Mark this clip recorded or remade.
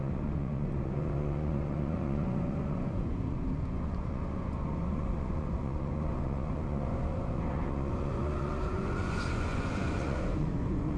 remade